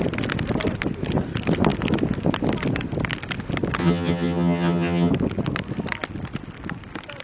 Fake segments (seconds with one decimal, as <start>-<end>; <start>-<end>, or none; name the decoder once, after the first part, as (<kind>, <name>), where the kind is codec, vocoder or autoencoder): 3.8-5.1 (vocoder, HiFi-GAN)